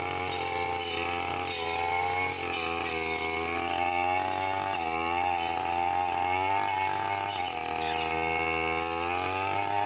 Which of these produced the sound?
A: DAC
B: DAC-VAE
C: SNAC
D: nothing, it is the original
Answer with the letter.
D